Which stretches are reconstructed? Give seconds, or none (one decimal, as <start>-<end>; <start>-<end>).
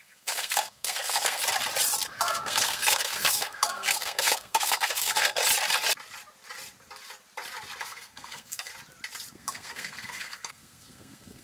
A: 0.0-1.4; 2.1-5.4; 7.8-8.7; 9.3-11.4